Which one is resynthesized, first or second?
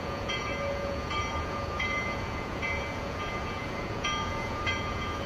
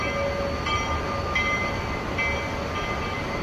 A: first